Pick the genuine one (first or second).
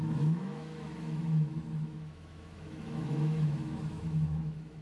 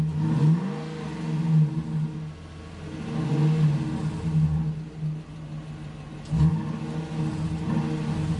second